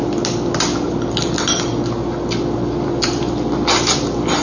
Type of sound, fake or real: real